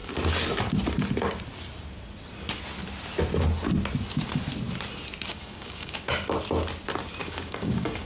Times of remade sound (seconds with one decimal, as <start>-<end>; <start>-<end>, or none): 5.3-6.1; 7.2-8.1